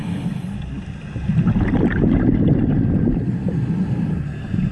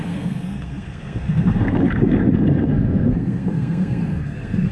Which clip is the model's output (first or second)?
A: second